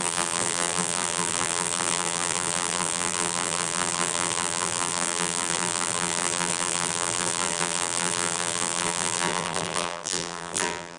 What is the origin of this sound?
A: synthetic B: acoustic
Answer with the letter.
A